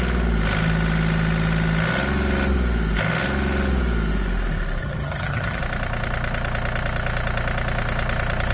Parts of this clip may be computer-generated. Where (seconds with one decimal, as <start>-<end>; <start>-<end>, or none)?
4.8-5.6